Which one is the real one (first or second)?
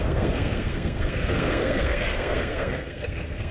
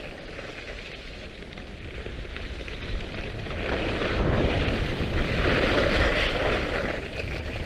second